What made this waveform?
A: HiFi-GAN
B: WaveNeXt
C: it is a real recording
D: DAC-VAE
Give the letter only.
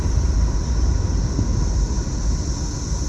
C